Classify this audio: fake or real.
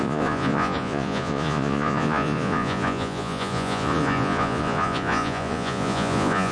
fake